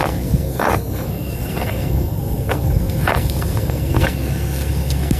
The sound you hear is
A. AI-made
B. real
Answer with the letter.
A